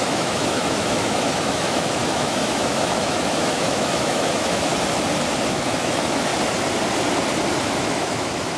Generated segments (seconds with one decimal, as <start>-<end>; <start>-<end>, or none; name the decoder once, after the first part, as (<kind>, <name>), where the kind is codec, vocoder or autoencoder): 0.0-4.7 (autoencoder, DAC-VAE); 5.5-6.3; 7.6-8.6